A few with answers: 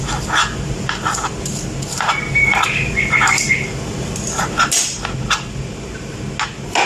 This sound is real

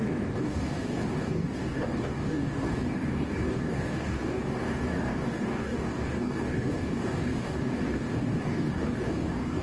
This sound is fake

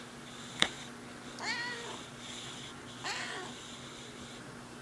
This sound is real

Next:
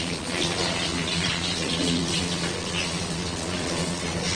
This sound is fake